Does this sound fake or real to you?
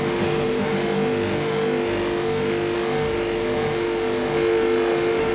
fake